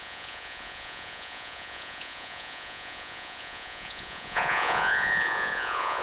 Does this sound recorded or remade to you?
remade